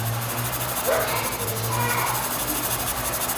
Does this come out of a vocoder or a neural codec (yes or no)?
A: no